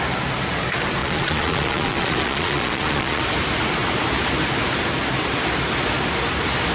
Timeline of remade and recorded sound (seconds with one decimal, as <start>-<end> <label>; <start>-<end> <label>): 0.0-1.0 recorded; 1.0-3.2 remade; 3.2-6.7 recorded